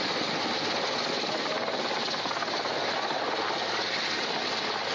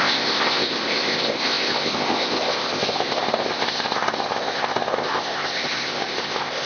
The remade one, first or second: second